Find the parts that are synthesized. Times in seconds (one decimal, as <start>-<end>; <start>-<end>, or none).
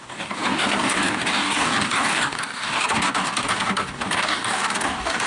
0.0-5.3